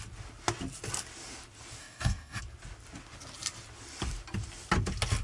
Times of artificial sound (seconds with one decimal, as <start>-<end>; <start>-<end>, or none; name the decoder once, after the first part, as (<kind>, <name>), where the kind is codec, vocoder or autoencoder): 1.8-2.4 (codec, DAC)